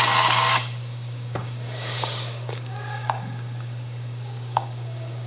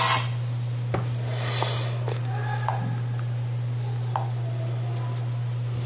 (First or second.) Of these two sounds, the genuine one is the second